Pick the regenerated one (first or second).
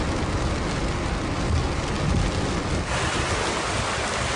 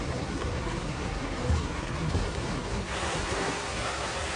second